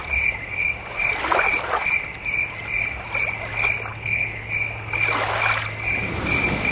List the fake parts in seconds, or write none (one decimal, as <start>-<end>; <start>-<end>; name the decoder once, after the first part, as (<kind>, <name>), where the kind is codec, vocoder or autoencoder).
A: 3.9-4.5 (codec, HILCodec)